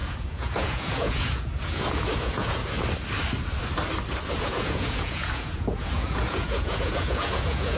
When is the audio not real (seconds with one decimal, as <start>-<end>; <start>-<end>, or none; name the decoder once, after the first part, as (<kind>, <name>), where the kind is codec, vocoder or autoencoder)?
0.0-2.6 (vocoder, Vocos); 4.3-7.8